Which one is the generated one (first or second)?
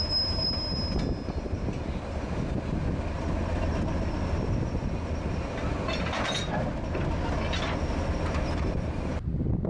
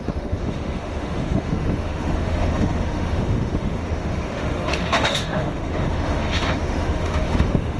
second